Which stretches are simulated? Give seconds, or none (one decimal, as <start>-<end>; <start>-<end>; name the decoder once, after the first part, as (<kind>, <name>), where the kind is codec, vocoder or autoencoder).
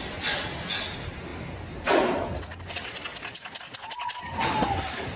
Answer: none